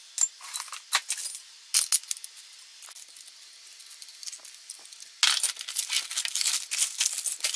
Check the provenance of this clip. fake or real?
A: real